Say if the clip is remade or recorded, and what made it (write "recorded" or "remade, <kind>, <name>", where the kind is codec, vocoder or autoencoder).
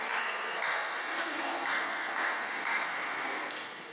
remade, codec, SNAC